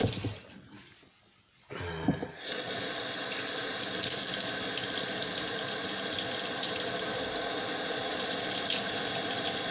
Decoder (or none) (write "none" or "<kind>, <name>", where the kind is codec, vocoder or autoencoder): none